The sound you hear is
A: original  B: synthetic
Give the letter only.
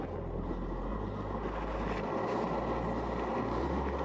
A